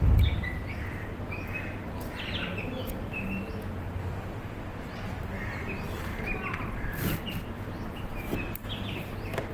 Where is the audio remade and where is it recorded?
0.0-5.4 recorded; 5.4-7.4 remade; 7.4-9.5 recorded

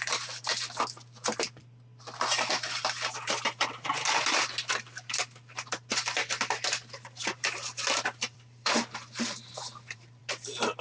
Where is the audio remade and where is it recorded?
0.0-7.2 recorded; 7.2-10.2 remade; 10.2-10.8 recorded